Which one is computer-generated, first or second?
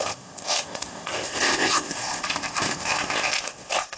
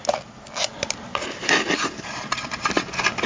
first